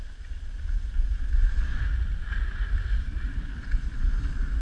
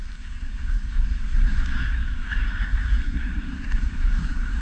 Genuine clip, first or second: first